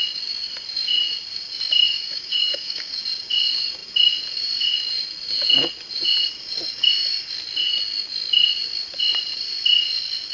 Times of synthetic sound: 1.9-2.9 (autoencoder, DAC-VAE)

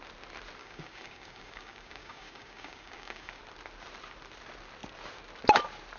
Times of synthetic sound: 0.6-3.4 (codec, DAC)

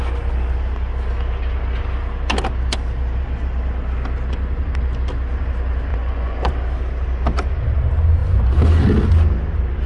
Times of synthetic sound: 5.9-6.5 (vocoder, Vocos)